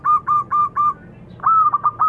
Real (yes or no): yes